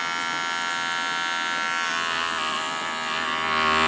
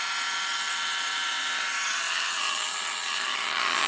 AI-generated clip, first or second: second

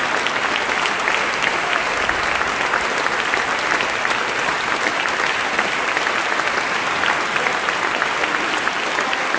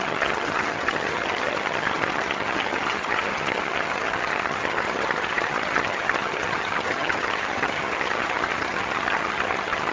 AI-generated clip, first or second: second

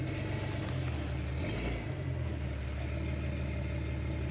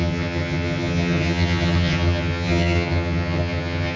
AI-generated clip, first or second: second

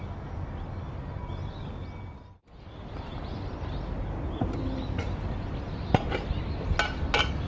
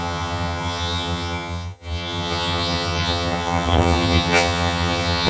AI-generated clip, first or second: second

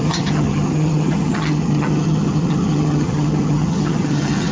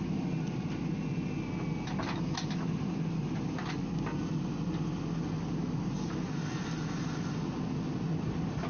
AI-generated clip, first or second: first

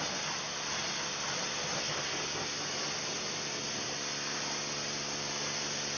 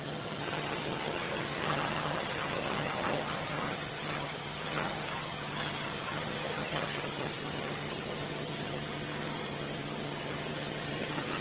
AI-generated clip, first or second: second